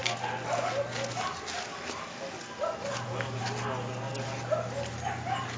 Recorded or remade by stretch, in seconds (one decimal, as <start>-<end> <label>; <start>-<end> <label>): 0.0-5.6 recorded